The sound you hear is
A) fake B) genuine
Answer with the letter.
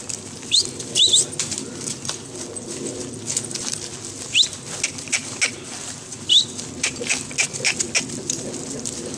B